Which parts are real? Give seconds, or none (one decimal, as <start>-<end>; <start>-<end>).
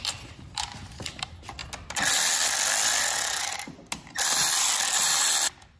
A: 0.0-5.8